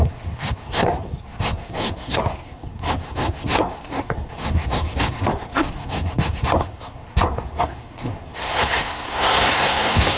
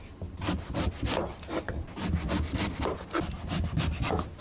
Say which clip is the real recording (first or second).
second